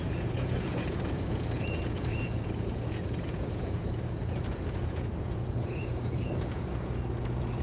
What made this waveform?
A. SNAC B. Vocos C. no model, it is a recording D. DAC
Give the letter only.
B